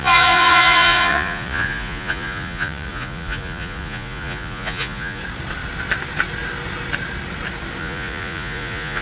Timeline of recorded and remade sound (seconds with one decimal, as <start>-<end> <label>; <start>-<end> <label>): 0.0-5.2 remade; 5.2-7.8 recorded; 7.8-9.0 remade